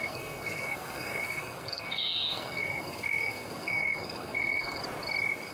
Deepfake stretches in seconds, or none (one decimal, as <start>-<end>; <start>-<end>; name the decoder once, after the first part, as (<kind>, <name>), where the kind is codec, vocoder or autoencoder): 0.0-4.8 (codec, SNAC)